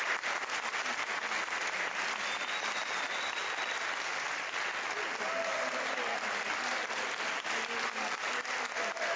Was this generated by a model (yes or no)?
no